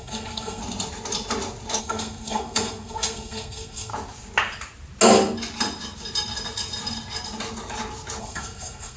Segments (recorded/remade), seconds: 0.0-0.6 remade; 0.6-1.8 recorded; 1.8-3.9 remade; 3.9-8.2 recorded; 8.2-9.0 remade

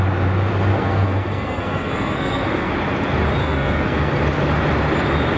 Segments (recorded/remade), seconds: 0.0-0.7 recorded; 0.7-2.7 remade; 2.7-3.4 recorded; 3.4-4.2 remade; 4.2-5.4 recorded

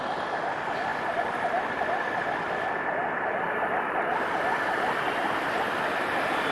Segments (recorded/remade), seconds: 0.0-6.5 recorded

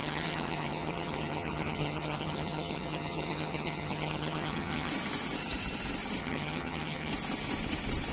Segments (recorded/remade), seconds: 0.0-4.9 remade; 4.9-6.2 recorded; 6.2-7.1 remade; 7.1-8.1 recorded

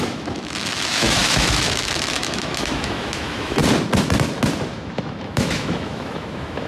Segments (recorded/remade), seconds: 0.0-3.6 remade; 3.6-4.7 recorded; 4.7-6.7 remade